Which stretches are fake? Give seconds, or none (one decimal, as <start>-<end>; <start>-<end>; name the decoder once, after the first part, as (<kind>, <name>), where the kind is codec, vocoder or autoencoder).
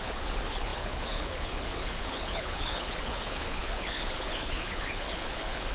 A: 0.0-5.7 (codec, HILCodec)